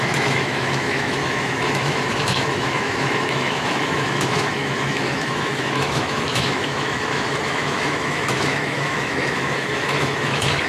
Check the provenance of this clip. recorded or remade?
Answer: remade